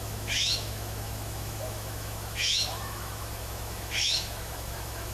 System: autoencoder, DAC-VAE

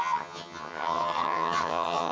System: vocoder, HiFi-GAN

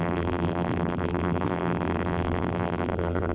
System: vocoder, BigVGAN v2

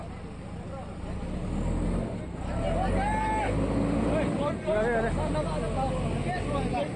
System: none